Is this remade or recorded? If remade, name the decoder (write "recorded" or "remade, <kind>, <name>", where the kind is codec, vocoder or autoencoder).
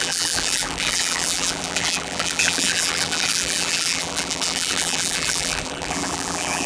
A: remade, vocoder, BigVGAN v2